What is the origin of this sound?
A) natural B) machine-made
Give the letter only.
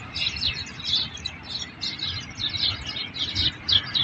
A